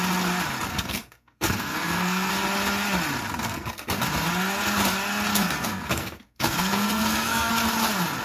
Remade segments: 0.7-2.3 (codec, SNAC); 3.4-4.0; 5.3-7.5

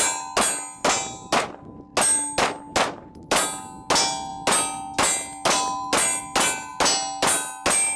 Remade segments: none

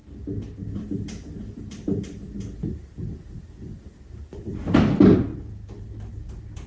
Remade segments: none